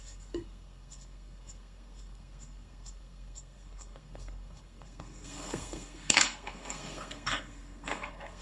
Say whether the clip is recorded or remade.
remade